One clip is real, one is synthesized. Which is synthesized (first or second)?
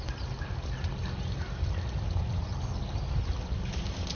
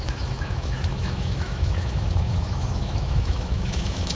second